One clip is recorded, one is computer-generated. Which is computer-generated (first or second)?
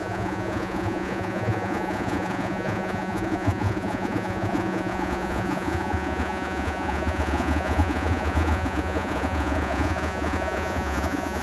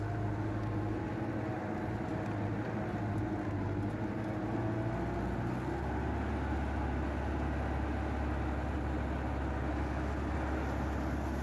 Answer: first